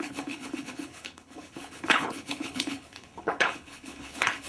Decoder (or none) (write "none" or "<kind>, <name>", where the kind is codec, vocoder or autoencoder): codec, HILCodec